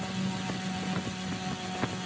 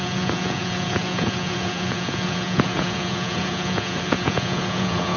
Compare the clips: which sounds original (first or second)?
first